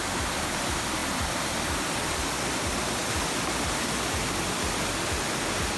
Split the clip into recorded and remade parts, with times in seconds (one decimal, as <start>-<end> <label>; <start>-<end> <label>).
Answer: 0.0-5.8 recorded